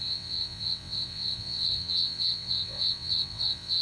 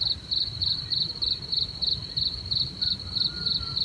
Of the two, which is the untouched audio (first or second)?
second